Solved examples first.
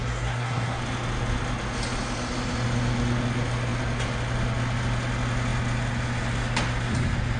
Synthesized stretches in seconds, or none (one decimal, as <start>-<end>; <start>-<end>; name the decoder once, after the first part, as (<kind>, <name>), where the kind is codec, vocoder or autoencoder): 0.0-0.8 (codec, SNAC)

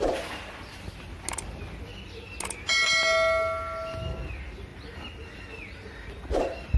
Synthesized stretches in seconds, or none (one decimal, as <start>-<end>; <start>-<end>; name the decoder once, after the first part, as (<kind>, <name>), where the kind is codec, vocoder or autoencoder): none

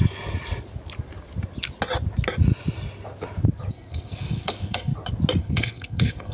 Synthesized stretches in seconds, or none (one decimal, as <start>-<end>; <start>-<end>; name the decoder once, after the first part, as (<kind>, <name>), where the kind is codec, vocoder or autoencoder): 3.7-4.9 (codec, SNAC); 5.4-6.3

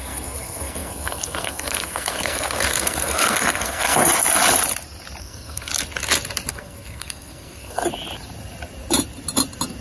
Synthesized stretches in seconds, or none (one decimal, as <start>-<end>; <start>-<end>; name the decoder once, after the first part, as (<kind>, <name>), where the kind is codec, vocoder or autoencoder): 0.0-4.0 (codec, SNAC); 5.2-5.7; 6.5-7.8

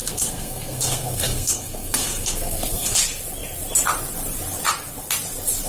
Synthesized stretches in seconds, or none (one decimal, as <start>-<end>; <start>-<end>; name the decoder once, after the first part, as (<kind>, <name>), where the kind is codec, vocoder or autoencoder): 0.0-3.0 (codec, SNAC)

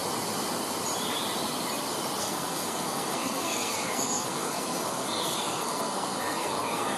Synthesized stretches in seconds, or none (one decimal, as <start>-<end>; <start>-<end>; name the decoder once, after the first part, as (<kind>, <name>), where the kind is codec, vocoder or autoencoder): 2.2-7.0 (codec, SNAC)

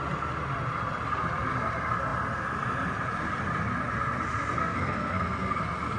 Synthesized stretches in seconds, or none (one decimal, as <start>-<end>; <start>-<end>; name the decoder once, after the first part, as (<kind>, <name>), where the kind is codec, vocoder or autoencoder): 4.6-5.6 (codec, SNAC)

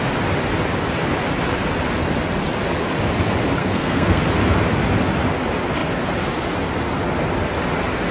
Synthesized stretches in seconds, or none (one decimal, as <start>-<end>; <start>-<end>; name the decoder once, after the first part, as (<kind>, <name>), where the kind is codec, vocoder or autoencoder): 3.6-4.2 (codec, SNAC)